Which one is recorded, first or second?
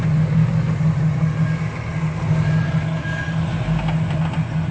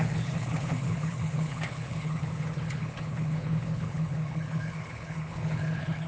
first